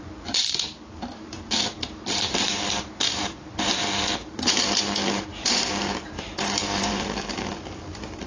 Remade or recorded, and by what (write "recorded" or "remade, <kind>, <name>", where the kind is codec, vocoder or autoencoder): remade, vocoder, BigVGAN v2